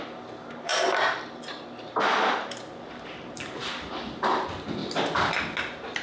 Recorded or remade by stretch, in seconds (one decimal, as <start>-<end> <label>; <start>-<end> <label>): 0.0-4.8 remade; 4.8-5.6 recorded; 5.6-6.0 remade